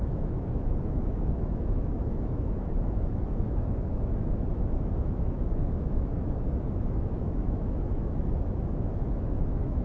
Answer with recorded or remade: remade